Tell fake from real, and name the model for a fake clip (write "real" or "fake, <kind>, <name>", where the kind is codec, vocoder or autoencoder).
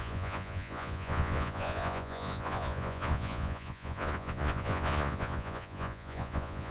fake, vocoder, Vocos